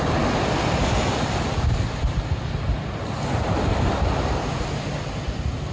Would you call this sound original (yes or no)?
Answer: yes